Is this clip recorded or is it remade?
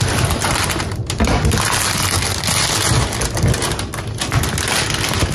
recorded